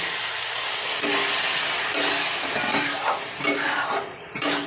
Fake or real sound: real